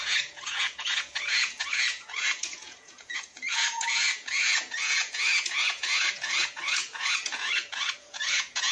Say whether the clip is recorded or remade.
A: remade